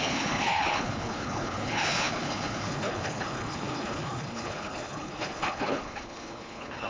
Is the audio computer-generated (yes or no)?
yes